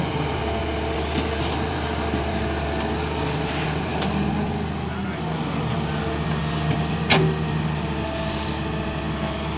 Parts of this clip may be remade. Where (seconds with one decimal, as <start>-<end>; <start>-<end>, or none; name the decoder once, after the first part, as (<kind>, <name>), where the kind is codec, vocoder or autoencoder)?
none